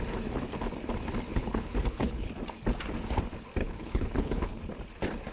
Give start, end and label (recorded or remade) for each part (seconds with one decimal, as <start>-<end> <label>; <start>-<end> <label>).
0.0-1.3 recorded; 1.3-2.3 remade; 2.3-3.6 recorded; 3.6-4.6 remade; 4.6-5.3 recorded